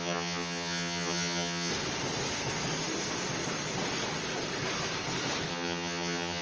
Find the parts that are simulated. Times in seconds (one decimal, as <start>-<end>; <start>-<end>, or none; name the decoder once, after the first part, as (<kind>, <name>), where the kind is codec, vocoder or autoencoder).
0.0-1.7 (vocoder, HiFi-GAN); 5.5-6.4